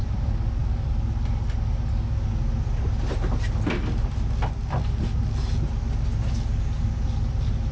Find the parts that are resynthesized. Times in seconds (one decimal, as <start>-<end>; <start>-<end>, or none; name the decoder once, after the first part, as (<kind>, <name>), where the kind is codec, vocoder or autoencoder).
none